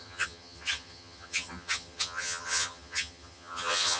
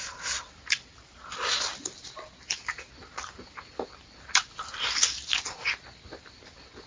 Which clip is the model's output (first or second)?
first